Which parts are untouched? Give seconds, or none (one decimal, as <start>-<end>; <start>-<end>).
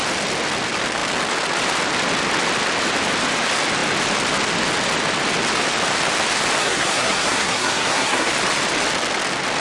0.0-6.6; 8.3-9.6